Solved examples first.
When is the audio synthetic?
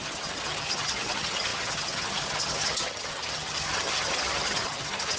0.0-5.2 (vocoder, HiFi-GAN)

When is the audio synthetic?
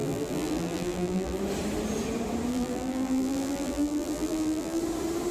0.0-1.4 (vocoder, BigVGAN v2); 2.5-4.8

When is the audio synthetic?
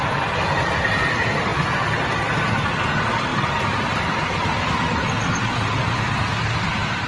none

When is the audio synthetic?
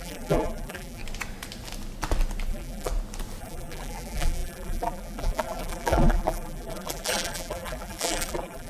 0.0-1.0 (vocoder, BigVGAN v2); 2.5-2.9; 3.4-8.7